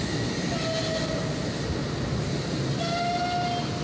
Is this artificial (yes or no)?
no